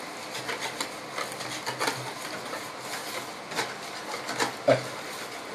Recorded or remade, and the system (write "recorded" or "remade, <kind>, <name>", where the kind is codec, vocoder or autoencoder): recorded